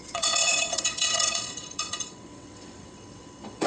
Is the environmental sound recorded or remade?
remade